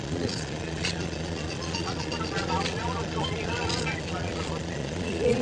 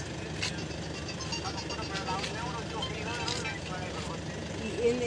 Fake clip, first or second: first